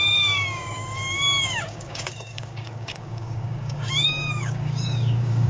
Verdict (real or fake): fake